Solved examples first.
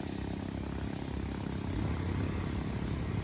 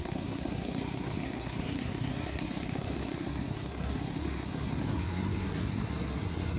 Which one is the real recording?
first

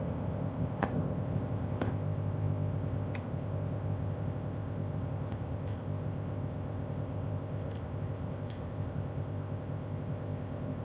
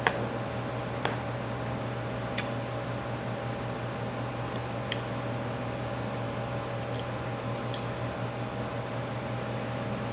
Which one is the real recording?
second